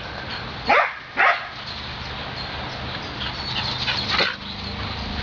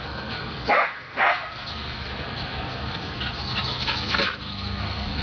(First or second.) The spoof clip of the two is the second